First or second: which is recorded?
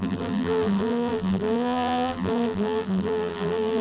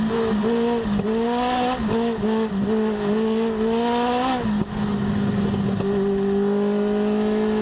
second